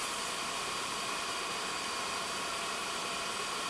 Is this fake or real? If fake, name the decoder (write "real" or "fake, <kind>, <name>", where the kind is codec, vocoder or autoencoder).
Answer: fake, vocoder, BigVGAN v2